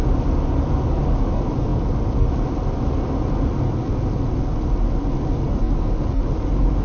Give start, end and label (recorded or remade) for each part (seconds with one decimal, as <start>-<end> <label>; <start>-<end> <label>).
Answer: 0.0-6.8 recorded